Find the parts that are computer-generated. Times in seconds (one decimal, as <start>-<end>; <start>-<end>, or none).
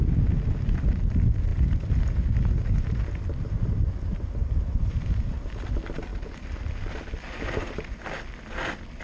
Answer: 4.4-5.5